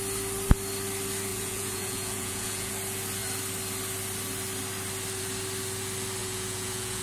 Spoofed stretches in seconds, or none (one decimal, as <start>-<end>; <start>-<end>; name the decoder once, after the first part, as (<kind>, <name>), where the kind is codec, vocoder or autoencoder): 1.3-2.7 (vocoder, Vocos); 6.2-7.0